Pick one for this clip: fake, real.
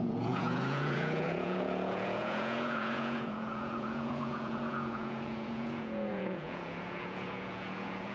fake